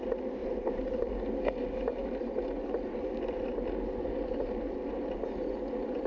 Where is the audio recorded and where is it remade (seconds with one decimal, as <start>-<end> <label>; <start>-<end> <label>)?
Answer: 0.0-0.4 recorded; 0.4-1.1 remade; 1.1-6.1 recorded